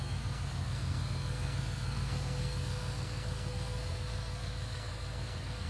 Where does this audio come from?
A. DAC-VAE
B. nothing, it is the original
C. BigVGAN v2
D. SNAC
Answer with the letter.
D